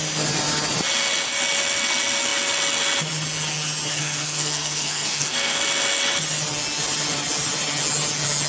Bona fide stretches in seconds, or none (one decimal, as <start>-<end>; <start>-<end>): 0.0-3.9; 5.6-8.5